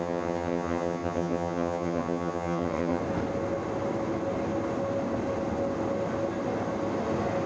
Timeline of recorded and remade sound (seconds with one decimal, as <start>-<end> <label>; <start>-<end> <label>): 0.0-3.0 remade; 3.0-7.5 recorded